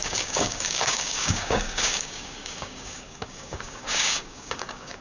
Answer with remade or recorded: remade